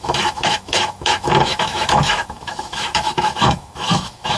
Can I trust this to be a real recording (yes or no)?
no